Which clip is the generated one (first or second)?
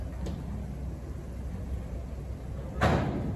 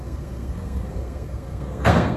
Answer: second